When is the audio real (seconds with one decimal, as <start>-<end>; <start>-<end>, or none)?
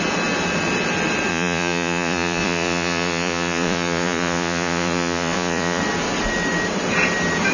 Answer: 0.0-1.3; 5.8-7.5